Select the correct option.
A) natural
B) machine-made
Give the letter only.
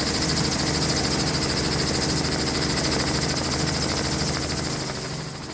A